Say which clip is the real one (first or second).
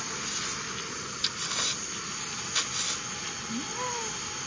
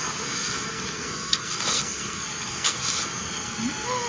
first